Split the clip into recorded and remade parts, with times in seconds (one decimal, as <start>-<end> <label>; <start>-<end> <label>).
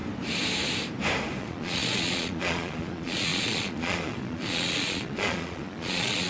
0.0-1.4 recorded; 1.4-6.3 remade